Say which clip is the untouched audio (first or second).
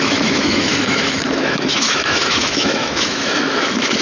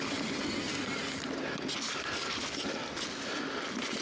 second